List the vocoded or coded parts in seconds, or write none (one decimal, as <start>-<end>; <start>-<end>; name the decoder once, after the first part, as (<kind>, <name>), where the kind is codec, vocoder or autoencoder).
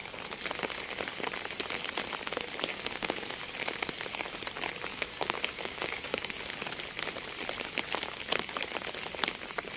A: 2.7-3.2 (codec, DAC); 4.9-6.3